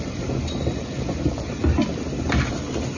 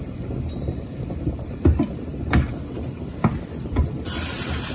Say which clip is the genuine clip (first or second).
first